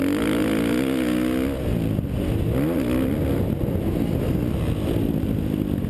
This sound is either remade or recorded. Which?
recorded